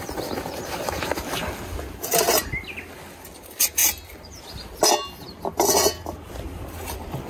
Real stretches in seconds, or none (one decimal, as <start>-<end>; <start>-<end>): 0.0-7.3